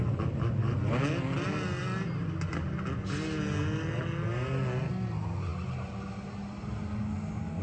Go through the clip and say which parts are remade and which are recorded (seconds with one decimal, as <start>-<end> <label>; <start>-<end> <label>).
0.0-7.6 recorded